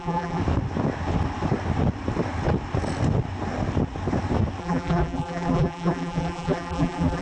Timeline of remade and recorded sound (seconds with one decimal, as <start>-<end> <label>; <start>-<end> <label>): 0.0-0.4 remade; 0.4-4.6 recorded; 4.6-7.2 remade